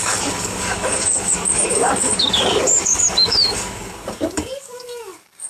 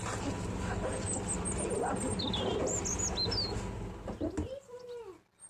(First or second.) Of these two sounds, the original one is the second